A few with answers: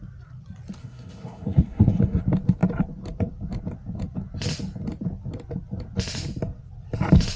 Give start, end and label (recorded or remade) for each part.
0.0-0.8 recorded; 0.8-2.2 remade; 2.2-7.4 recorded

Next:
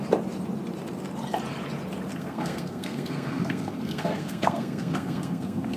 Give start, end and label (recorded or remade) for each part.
0.0-2.1 recorded; 2.1-5.8 remade

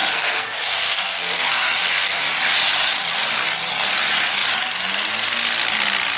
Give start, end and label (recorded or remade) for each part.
0.0-2.2 remade; 2.2-6.2 recorded

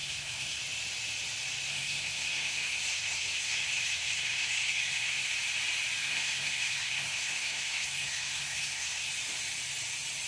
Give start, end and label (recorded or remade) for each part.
0.0-0.6 remade; 0.6-1.7 recorded; 1.7-5.3 remade; 5.3-6.0 recorded; 6.0-9.1 remade; 9.1-10.3 recorded